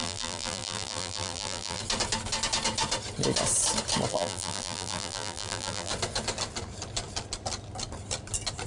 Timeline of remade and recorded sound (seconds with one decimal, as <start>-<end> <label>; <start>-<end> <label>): 0.0-1.8 remade; 1.8-4.1 recorded; 4.1-5.9 remade; 5.9-8.7 recorded